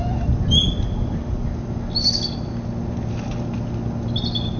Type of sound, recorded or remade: recorded